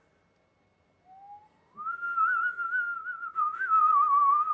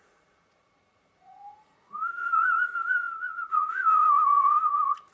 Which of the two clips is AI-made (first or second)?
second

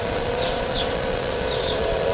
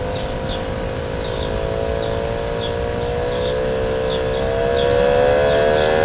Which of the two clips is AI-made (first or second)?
first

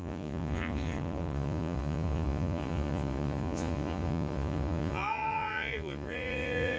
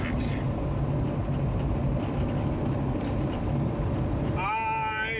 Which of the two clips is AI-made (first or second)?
first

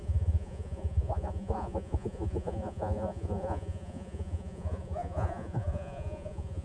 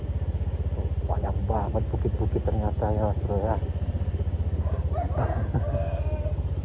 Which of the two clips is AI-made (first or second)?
first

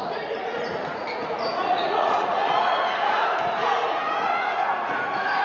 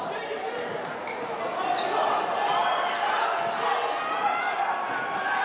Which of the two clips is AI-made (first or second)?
first